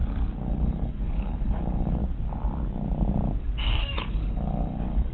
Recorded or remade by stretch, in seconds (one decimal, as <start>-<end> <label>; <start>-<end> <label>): 0.0-0.5 recorded; 0.5-2.0 remade; 2.0-3.4 recorded; 3.4-5.1 remade